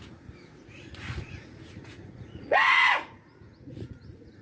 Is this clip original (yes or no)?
no